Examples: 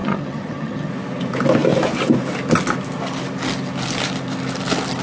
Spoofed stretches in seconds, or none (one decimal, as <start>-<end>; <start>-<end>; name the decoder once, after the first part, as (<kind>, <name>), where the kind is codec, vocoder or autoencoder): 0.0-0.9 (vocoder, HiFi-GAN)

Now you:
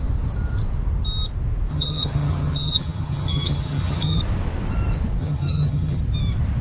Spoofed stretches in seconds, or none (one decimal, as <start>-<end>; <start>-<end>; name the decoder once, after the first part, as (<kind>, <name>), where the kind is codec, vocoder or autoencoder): 1.7-4.2 (vocoder, HiFi-GAN); 5.2-6.0

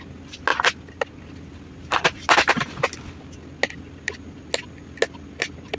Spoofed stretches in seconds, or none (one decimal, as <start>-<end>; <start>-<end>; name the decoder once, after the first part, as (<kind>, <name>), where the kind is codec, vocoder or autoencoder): none

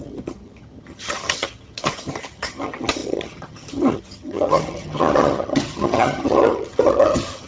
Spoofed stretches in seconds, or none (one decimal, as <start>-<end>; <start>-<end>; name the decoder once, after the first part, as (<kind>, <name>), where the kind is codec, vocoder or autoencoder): 0.0-7.5 (vocoder, HiFi-GAN)

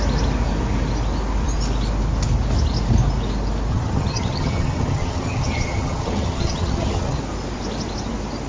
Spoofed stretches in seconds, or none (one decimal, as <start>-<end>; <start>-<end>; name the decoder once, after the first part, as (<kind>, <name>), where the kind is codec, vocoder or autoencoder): 3.7-7.2 (vocoder, HiFi-GAN)

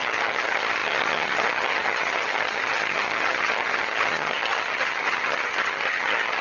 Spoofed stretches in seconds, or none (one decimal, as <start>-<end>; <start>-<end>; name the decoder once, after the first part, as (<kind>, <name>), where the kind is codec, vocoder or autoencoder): 0.0-6.4 (vocoder, HiFi-GAN)